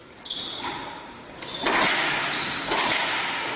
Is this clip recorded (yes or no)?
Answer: yes